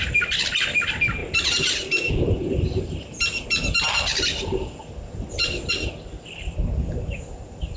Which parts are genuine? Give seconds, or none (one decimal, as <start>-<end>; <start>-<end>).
0.0-7.8

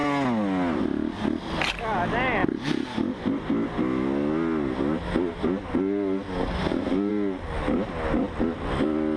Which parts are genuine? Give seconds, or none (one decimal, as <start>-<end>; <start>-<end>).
0.0-9.2

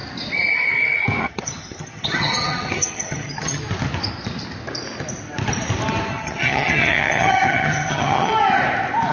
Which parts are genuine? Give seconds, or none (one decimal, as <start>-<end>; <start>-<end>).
0.0-1.2; 3.6-6.1; 8.3-9.1